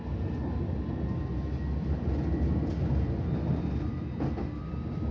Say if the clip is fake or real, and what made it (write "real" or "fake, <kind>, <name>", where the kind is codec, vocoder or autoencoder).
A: real